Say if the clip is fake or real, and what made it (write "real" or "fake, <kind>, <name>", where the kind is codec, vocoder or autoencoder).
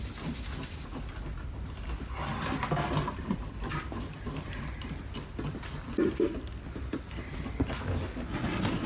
real